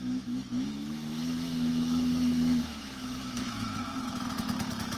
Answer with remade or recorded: remade